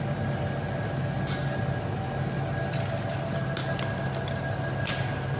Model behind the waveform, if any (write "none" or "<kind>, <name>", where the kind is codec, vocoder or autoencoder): none